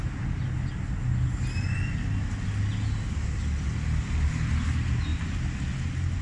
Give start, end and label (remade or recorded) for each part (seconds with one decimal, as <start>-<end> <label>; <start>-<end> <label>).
0.0-6.2 recorded